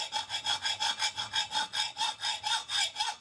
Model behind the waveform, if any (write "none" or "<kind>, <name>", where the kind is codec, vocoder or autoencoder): none